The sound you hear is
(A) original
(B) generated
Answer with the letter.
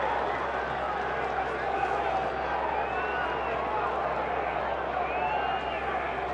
A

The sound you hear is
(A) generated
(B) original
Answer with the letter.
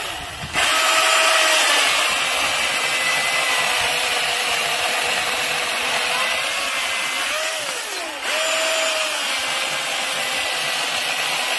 B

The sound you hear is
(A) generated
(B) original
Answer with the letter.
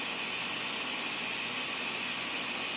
A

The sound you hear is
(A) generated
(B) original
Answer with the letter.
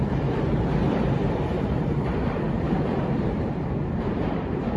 A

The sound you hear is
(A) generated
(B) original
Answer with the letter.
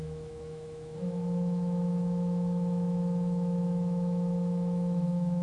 A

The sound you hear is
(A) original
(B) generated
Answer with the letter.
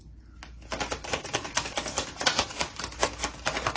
A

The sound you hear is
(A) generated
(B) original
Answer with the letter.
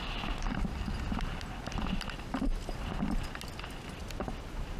B